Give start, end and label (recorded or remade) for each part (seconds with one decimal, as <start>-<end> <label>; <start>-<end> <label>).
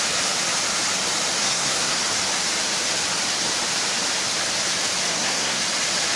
0.0-1.4 recorded; 1.4-2.0 remade; 2.0-5.1 recorded; 5.1-5.6 remade; 5.6-6.2 recorded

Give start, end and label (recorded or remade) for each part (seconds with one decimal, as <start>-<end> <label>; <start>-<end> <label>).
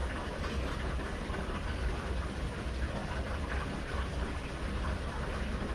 0.0-5.7 recorded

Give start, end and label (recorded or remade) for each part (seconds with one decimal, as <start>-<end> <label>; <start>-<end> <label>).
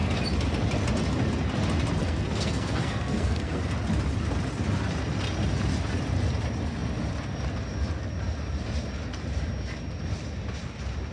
0.0-2.0 recorded; 2.0-3.6 remade; 3.6-11.1 recorded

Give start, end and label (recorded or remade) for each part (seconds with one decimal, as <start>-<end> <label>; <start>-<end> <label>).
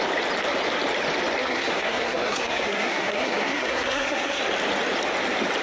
0.0-1.4 recorded; 1.4-4.4 remade; 4.4-5.6 recorded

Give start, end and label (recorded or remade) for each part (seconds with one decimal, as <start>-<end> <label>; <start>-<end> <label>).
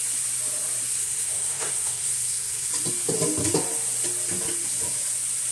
0.0-1.0 recorded; 1.0-2.7 remade; 2.7-5.5 recorded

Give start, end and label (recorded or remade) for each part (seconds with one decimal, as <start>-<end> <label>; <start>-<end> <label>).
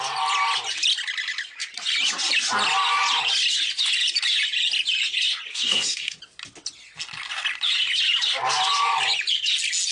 0.0-5.5 recorded; 5.5-6.2 remade; 6.2-9.9 recorded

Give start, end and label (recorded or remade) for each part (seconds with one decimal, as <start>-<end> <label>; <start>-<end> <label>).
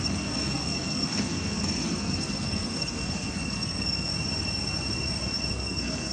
0.0-4.1 remade; 4.1-5.5 recorded; 5.5-6.1 remade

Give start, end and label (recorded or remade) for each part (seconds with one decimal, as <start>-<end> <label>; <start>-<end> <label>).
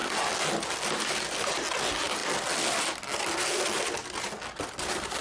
0.0-5.2 recorded